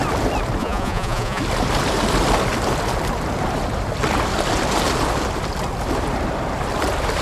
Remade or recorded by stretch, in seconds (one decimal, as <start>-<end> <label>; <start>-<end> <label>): 0.0-0.6 recorded; 0.6-1.4 remade; 1.4-7.2 recorded